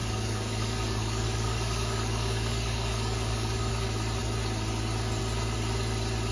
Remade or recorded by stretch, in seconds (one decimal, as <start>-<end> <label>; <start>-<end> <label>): 0.0-3.7 remade; 3.7-6.3 recorded